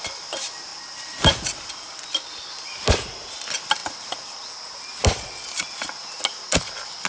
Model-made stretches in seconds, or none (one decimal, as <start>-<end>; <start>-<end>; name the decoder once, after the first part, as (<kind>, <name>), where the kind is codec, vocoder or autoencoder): none